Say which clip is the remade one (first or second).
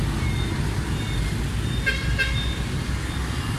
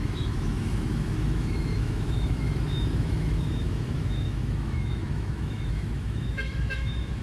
second